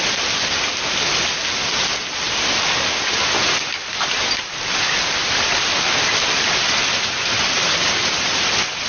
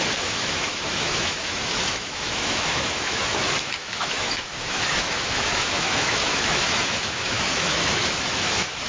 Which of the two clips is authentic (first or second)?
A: first